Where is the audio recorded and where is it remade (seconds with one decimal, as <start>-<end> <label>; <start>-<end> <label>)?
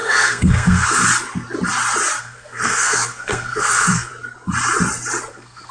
0.0-1.0 remade; 1.0-2.2 recorded; 2.2-4.1 remade; 4.1-5.3 recorded; 5.3-5.7 remade